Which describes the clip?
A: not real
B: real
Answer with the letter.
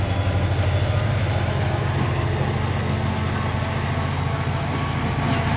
B